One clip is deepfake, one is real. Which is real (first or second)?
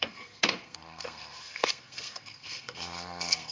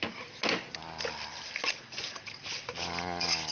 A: second